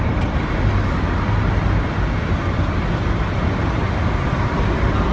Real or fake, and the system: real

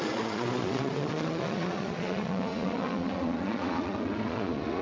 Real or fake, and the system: fake, vocoder, Vocos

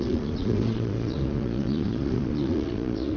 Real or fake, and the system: fake, vocoder, Vocos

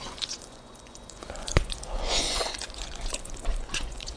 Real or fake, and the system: fake, vocoder, Vocos